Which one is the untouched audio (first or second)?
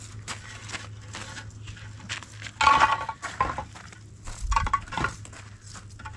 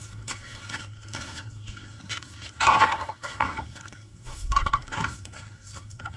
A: first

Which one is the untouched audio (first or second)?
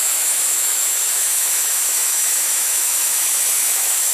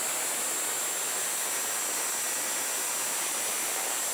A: second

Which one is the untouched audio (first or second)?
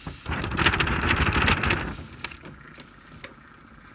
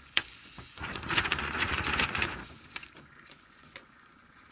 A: first